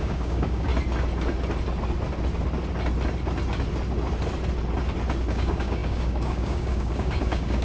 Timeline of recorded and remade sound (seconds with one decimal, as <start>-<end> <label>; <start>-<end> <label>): 0.0-0.7 remade; 0.7-5.3 recorded; 5.3-7.6 remade

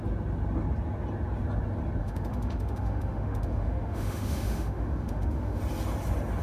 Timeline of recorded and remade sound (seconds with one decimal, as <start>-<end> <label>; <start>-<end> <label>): 0.0-2.0 recorded; 2.0-5.6 remade; 5.6-6.4 recorded

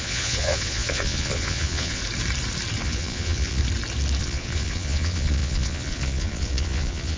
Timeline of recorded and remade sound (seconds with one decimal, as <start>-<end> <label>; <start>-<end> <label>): 0.0-2.0 remade; 2.0-2.8 recorded; 2.8-3.6 remade; 3.6-4.2 recorded; 4.2-7.2 remade

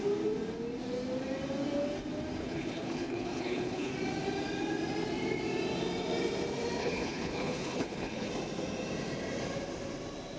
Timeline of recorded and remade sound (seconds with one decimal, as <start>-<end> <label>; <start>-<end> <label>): 0.0-2.4 recorded; 2.4-3.9 remade; 3.9-6.8 recorded; 6.8-8.3 remade; 8.3-10.4 recorded

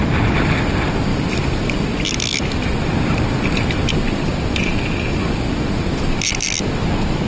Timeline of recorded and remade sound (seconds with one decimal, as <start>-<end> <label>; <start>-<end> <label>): 0.0-1.1 recorded; 1.1-1.8 remade; 1.8-7.3 recorded

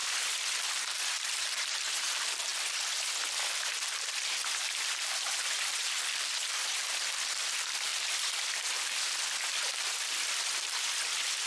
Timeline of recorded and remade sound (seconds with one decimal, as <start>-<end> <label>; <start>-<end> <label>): 0.0-2.5 remade; 2.5-7.3 recorded; 7.3-11.5 remade

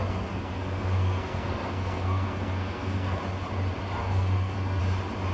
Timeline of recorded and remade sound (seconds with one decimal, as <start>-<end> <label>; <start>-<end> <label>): 0.0-3.2 remade; 3.2-4.0 recorded; 4.0-4.8 remade; 4.8-5.3 recorded

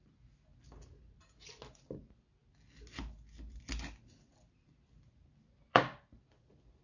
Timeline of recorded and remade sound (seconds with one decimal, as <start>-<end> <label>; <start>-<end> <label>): 0.0-5.7 recorded; 5.7-6.2 remade; 6.2-6.8 recorded